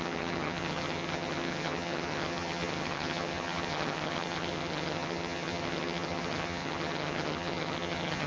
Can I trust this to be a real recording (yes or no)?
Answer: no